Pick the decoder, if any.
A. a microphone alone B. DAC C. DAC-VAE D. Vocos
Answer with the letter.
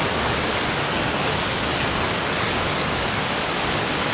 B